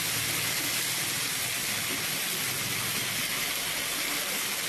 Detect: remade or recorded recorded